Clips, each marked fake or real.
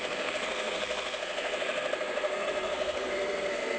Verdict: fake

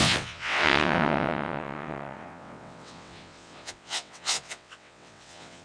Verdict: fake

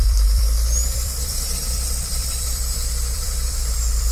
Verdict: fake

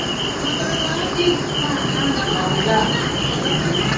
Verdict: real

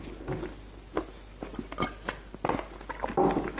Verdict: real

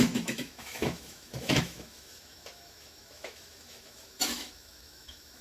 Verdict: fake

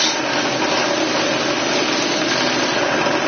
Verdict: real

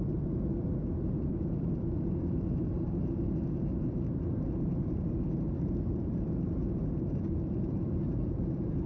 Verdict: fake